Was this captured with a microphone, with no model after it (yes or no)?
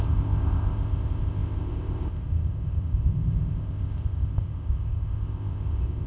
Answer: no